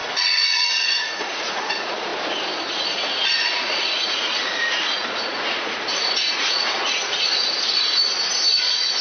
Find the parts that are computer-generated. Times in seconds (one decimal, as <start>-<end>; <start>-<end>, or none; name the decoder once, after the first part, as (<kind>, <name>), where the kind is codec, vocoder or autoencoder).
0.0-2.1 (vocoder, Vocos); 2.7-7.3; 8.5-9.0